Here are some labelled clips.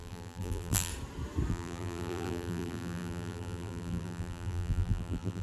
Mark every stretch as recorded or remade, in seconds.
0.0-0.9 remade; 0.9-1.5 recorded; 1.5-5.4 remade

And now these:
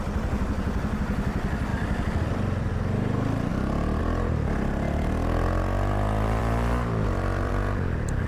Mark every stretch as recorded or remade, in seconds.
0.0-1.7 recorded; 1.7-2.7 remade; 2.7-6.4 recorded; 6.4-7.5 remade; 7.5-8.3 recorded

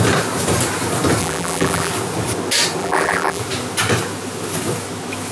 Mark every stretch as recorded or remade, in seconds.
0.0-1.2 recorded; 1.2-1.9 remade; 1.9-2.8 recorded; 2.8-3.4 remade; 3.4-5.3 recorded

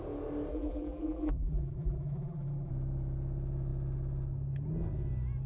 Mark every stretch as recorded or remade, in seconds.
0.0-0.5 recorded; 0.5-2.7 remade; 2.7-5.5 recorded

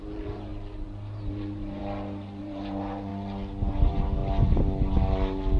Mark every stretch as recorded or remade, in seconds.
0.0-1.8 remade; 1.8-2.4 recorded; 2.4-3.1 remade; 3.1-3.7 recorded; 3.7-4.2 remade; 4.2-5.6 recorded

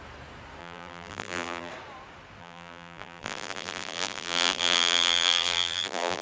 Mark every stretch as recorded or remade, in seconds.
0.0-0.6 recorded; 0.6-1.7 remade; 1.7-2.4 recorded; 2.4-6.2 remade

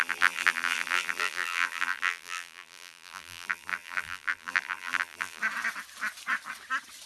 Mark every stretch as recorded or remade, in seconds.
0.0-5.4 remade; 5.4-7.1 recorded